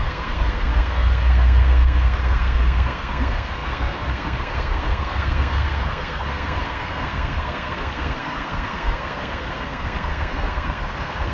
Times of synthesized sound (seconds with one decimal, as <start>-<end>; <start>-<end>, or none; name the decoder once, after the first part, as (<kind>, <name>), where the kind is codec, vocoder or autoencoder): 0.0-11.3 (codec, SNAC)